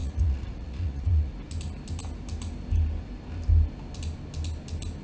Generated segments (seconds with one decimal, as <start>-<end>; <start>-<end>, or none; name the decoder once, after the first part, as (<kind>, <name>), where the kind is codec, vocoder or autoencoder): 0.0-1.3 (vocoder, Vocos)